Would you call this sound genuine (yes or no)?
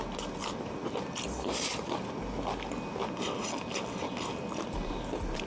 yes